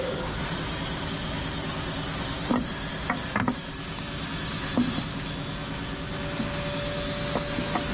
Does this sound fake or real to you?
real